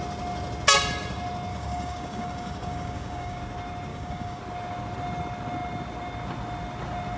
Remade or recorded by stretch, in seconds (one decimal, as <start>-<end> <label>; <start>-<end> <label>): 0.0-1.5 recorded; 1.5-3.4 remade; 3.4-3.9 recorded; 3.9-4.4 remade; 4.4-7.2 recorded

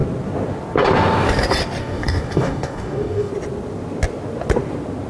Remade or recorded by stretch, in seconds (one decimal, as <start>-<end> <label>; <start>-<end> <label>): 0.0-1.8 recorded; 1.8-3.3 remade; 3.3-5.1 recorded

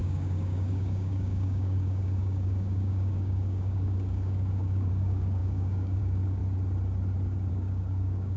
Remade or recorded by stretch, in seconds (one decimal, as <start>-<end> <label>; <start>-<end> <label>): 0.0-6.4 remade; 6.4-7.5 recorded; 7.5-8.4 remade

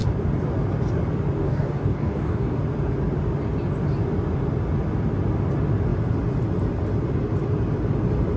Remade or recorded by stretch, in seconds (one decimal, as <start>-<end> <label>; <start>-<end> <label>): 0.0-1.4 recorded; 1.4-2.6 remade; 2.6-8.4 recorded

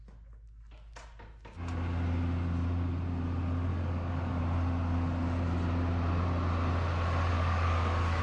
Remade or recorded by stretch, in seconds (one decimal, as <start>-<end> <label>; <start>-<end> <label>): 0.0-3.7 recorded; 3.7-4.4 remade; 4.4-7.3 recorded; 7.3-8.2 remade